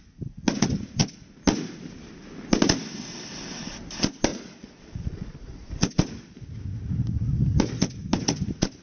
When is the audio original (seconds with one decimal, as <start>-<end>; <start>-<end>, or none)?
0.0-4.3; 5.7-8.8